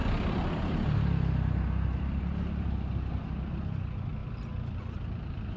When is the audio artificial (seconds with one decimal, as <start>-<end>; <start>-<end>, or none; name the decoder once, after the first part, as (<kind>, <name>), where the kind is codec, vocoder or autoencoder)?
none